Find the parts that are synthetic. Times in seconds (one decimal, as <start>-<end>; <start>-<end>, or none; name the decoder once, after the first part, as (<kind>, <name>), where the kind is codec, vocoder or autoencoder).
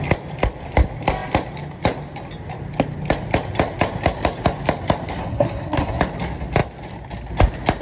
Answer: 5.2-6.0 (codec, SNAC)